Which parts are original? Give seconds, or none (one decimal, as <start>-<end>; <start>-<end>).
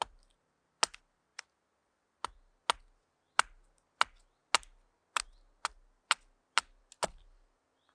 0.0-7.9